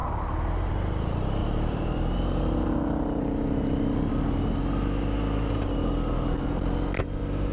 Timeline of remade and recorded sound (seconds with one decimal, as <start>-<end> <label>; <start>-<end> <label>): 0.0-1.4 recorded; 1.4-4.1 remade; 4.1-7.5 recorded